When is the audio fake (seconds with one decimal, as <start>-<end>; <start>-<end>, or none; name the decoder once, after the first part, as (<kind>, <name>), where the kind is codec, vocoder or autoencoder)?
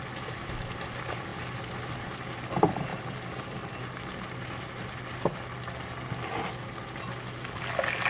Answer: none